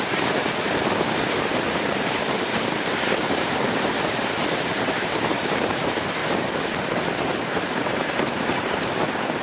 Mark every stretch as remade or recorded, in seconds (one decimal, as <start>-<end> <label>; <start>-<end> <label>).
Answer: 0.0-6.2 remade; 6.2-7.1 recorded; 7.1-9.4 remade